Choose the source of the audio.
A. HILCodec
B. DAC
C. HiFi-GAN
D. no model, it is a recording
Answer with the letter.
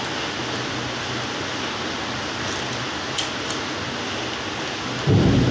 D